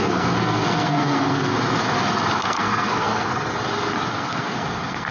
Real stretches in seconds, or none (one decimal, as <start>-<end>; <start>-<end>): 1.5-2.4; 3.3-4.1